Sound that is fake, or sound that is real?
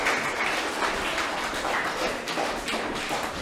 fake